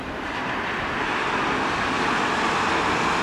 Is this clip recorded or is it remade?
recorded